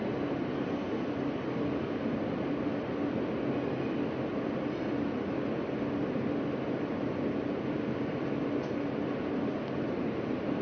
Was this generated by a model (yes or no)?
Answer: no